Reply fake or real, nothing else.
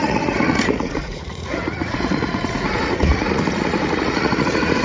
fake